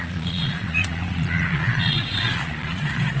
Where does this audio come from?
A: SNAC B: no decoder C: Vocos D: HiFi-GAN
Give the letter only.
C